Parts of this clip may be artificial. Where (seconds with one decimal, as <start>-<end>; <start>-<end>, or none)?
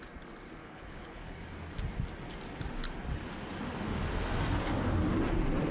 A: 0.6-1.3